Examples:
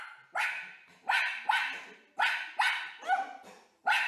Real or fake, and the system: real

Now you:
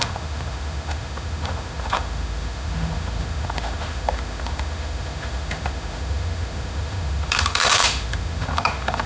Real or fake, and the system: fake, autoencoder, DAC-VAE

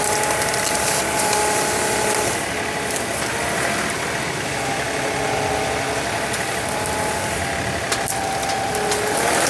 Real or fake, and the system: real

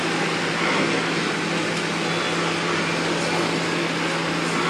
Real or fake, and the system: real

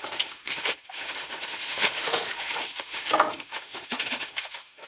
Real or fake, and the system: fake, autoencoder, DAC-VAE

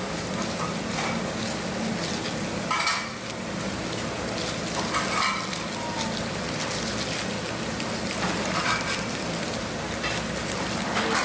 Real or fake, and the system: real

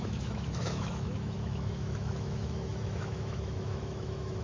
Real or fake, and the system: fake, autoencoder, DAC-VAE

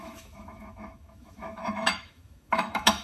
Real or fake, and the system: fake, autoencoder, DAC-VAE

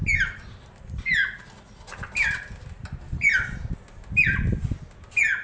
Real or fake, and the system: real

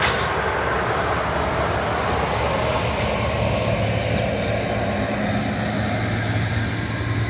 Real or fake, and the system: real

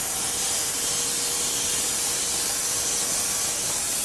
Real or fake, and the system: real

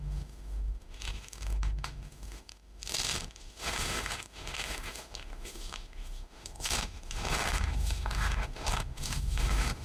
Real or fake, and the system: fake, autoencoder, DAC-VAE